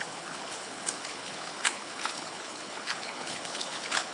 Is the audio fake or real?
fake